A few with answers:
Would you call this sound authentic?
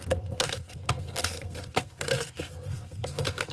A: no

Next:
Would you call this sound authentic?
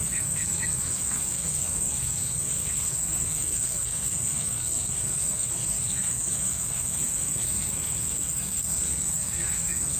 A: no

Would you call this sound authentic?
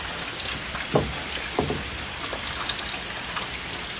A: yes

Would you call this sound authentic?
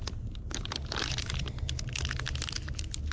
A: yes